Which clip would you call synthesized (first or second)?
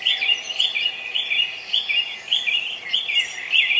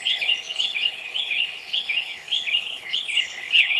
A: second